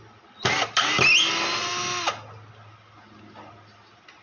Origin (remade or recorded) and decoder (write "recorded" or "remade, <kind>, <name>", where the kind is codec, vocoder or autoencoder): recorded